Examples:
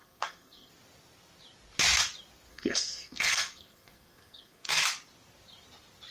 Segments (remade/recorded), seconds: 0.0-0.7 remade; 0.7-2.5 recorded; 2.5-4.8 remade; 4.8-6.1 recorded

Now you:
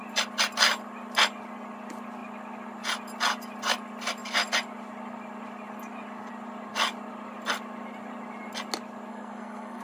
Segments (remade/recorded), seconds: 0.0-9.1 recorded; 9.1-9.8 remade